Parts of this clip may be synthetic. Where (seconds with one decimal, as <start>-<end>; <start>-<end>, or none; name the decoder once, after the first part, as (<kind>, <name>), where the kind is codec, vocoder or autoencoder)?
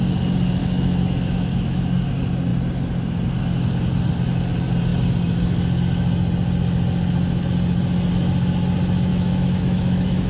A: 0.6-2.1 (autoencoder, DAC-VAE); 9.1-10.3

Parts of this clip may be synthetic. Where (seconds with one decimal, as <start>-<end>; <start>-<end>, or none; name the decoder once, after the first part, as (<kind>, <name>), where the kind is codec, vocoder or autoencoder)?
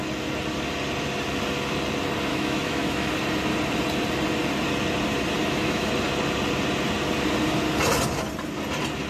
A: 2.3-3.1 (autoencoder, DAC-VAE); 5.4-5.9